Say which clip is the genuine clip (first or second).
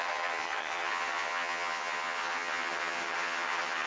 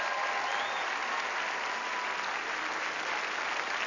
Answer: second